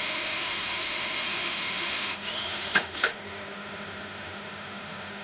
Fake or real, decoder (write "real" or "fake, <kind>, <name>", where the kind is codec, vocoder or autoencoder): fake, autoencoder, DAC-VAE